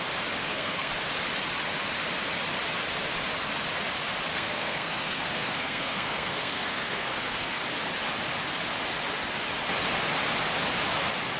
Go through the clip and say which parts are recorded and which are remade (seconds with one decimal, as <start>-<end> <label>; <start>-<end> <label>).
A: 0.0-0.4 recorded; 0.4-0.9 remade; 0.9-4.3 recorded; 4.3-7.6 remade; 7.6-11.4 recorded